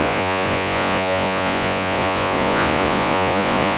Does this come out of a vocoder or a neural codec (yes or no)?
yes